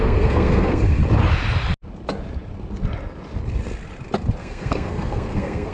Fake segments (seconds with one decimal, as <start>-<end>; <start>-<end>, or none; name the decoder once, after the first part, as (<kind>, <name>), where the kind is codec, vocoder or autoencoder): 0.0-1.0 (codec, SNAC); 4.4-5.7